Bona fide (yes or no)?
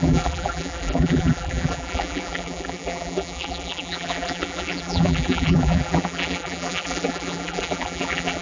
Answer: no